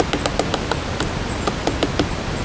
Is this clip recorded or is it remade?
recorded